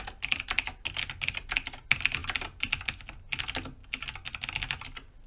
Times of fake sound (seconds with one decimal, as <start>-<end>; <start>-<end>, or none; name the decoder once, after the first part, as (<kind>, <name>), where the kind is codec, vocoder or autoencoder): none